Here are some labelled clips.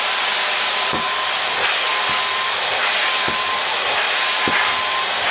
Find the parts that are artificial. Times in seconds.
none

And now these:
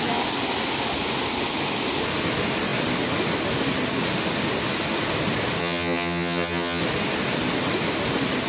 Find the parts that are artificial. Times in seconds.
5.6-6.8 (vocoder, HiFi-GAN)

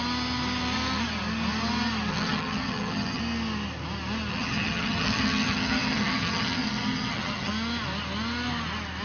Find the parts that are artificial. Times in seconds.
2.1-3.2 (vocoder, HiFi-GAN); 4.3-7.5

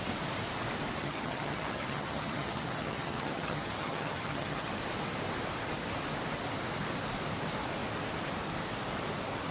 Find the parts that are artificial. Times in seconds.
1.0-4.7 (vocoder, HiFi-GAN)

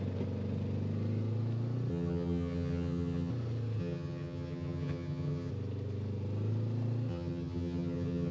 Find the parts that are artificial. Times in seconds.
1.9-3.3 (vocoder, HiFi-GAN); 3.8-5.5; 7.1-8.3